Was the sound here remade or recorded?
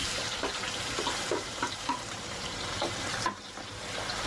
remade